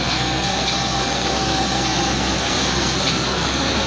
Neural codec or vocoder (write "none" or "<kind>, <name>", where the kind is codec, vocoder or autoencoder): codec, SNAC